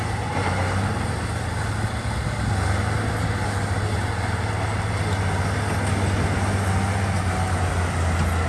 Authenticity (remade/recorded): recorded